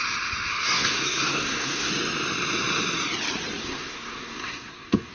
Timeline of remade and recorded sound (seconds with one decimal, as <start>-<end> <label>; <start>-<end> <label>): 0.0-0.5 recorded; 0.5-1.9 remade; 1.9-3.6 recorded; 3.6-5.1 remade